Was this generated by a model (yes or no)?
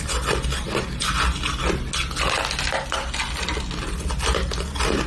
no